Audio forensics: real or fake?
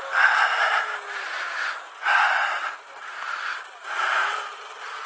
real